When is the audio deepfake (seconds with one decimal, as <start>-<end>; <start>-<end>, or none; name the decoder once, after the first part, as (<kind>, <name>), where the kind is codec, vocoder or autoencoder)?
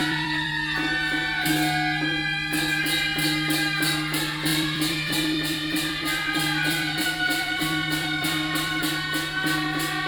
0.0-0.5 (vocoder, BigVGAN v2); 4.5-8.8